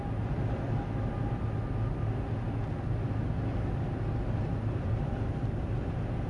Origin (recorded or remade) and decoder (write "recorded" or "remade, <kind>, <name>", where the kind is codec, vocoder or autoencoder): recorded